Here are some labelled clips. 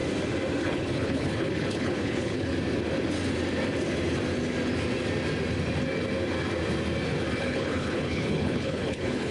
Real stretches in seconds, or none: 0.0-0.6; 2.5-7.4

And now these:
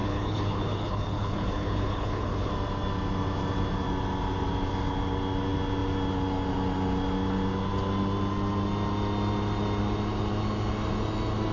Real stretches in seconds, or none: 2.5-11.5

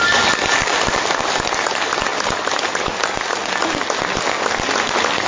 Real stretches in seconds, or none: 0.0-5.3